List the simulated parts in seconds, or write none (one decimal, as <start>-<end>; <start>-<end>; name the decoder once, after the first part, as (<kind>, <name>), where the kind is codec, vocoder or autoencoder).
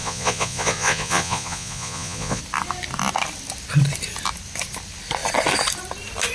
0.0-2.4 (vocoder, Vocos)